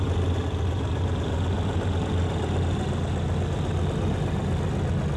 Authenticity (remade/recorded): recorded